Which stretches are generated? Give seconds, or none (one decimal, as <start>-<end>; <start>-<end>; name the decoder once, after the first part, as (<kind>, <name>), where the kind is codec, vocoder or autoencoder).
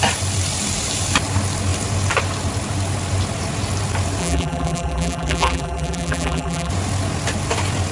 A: 4.2-6.7 (vocoder, BigVGAN v2)